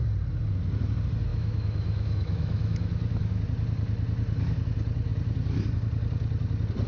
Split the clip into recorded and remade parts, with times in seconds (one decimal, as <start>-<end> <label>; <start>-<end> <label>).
0.0-1.3 recorded; 1.3-3.4 remade; 3.4-6.9 recorded